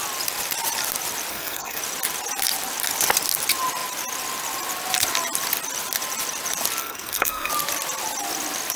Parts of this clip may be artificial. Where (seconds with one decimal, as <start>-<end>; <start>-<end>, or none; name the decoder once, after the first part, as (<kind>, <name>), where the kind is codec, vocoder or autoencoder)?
1.3-1.8 (codec, SNAC); 6.8-7.5